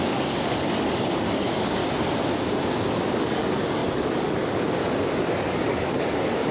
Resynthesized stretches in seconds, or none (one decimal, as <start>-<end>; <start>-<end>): 0.0-1.8; 2.7-6.5